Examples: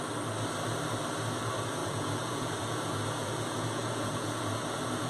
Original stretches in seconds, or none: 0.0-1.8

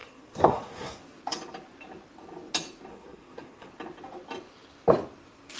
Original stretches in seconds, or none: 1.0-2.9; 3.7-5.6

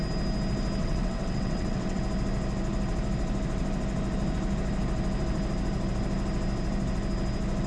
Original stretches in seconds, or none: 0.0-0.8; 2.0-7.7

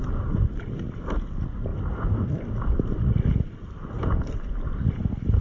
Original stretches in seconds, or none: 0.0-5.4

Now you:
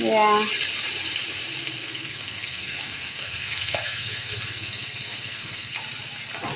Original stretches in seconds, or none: 0.0-1.8; 5.8-6.6

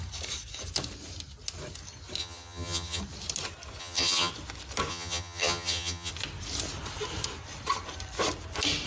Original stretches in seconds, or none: 0.0-2.2; 3.0-3.8; 4.3-4.9; 6.1-8.9